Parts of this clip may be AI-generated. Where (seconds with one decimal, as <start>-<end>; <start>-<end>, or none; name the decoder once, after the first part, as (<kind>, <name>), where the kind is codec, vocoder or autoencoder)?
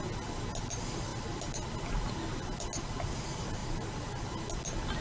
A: 3.6-4.3 (vocoder, BigVGAN v2)